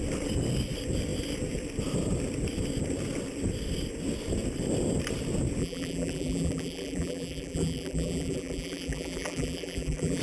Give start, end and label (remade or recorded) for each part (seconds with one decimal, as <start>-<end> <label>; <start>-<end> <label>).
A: 0.0-5.6 recorded; 5.6-10.2 remade